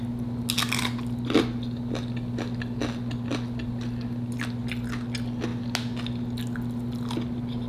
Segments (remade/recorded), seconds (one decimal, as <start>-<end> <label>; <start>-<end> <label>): 0.0-7.7 recorded